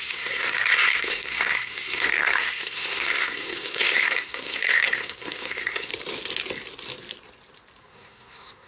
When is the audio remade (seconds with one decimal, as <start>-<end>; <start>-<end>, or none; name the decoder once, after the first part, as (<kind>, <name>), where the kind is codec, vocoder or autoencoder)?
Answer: 0.0-5.9 (codec, SNAC); 7.8-8.7